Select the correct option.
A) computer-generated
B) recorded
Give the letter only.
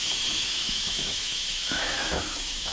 A